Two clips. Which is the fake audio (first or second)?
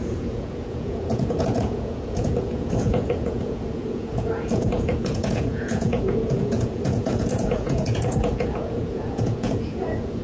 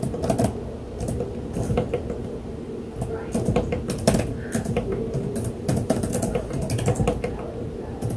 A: first